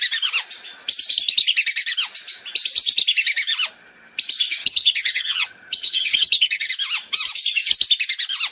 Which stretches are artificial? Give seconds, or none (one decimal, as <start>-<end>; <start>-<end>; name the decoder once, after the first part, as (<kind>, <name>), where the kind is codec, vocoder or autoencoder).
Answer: 4.6-6.7 (vocoder, HiFi-GAN)